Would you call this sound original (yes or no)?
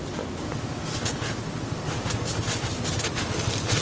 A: yes